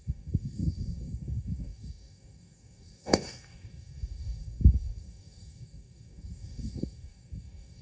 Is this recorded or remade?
remade